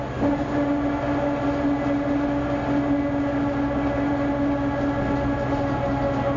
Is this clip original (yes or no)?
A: yes